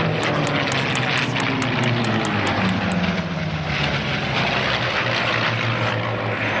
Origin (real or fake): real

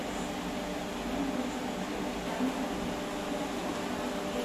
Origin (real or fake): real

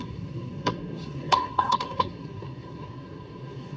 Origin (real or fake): fake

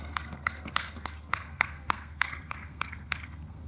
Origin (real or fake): fake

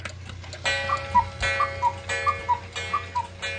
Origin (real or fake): real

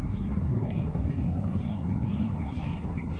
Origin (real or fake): fake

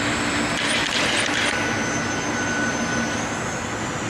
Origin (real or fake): real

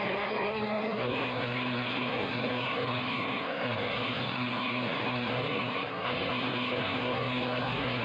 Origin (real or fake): fake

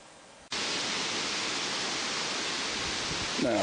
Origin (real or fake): real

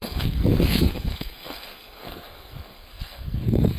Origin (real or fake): fake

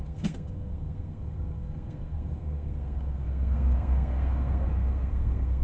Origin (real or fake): fake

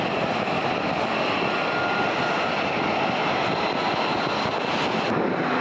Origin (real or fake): real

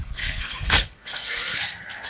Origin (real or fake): fake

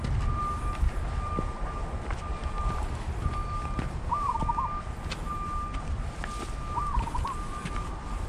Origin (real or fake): real